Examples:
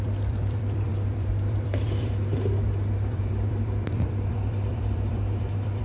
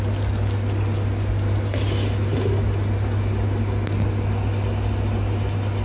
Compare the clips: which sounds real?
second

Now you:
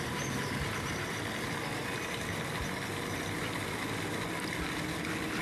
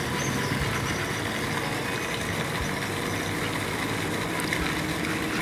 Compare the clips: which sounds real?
second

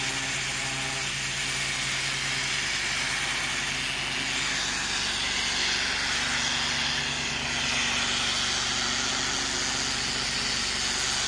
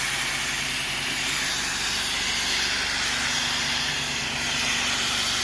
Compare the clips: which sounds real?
first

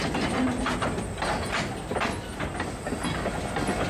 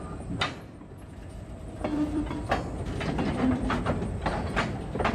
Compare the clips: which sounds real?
first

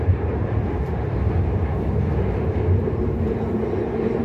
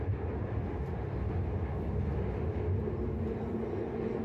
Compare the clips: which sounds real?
second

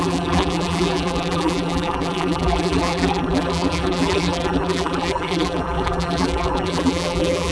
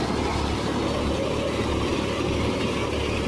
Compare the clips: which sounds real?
second